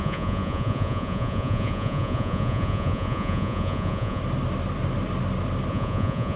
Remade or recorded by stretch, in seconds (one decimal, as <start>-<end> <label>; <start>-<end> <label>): 0.0-4.2 remade; 4.2-5.7 recorded; 5.7-6.4 remade